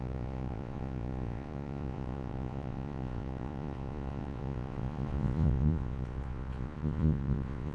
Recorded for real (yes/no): no